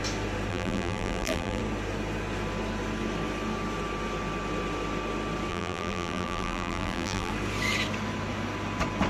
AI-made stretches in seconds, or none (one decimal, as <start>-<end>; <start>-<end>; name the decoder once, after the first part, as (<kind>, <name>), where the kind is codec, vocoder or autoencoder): 0.5-1.6 (vocoder, BigVGAN v2); 5.5-7.3